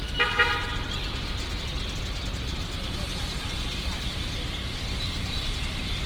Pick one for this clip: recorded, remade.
recorded